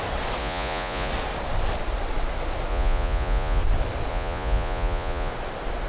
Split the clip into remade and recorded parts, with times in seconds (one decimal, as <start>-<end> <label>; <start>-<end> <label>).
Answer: 0.0-0.4 recorded; 0.4-1.1 remade; 1.1-2.7 recorded; 2.7-3.6 remade; 3.6-4.1 recorded; 4.1-5.3 remade; 5.3-5.9 recorded